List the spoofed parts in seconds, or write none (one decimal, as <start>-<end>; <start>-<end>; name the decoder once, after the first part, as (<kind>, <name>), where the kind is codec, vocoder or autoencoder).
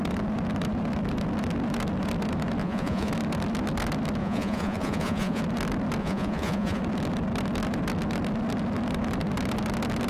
2.6-3.1 (vocoder, Vocos); 4.2-5.4; 6.0-6.8